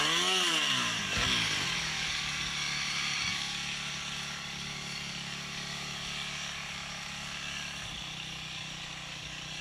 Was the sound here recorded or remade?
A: remade